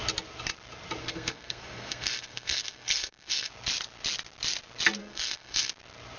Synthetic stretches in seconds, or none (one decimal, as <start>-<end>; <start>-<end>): 1.0-3.5; 5.0-5.7